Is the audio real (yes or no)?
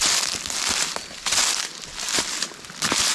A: yes